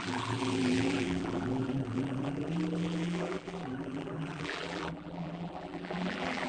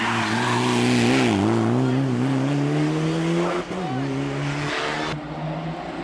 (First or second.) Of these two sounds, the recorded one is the second